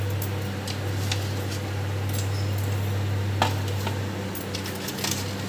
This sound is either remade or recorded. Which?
recorded